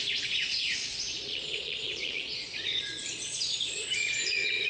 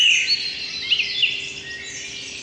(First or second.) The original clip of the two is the second